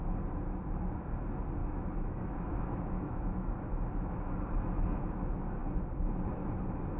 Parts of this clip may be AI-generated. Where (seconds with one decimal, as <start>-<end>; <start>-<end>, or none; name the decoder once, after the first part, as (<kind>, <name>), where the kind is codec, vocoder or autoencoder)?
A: 1.6-4.4 (autoencoder, DAC-VAE)